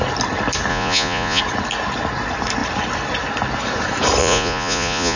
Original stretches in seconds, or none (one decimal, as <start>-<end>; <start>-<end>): 0.0-0.7; 1.4-4.2